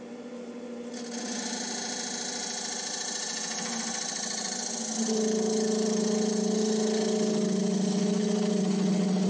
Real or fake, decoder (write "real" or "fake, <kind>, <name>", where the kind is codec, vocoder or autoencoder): real